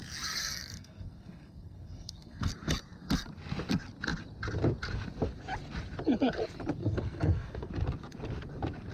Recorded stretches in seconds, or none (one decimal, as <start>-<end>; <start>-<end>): 0.0-0.4; 2.5-6.8; 7.7-8.9